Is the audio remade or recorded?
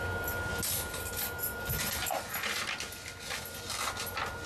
recorded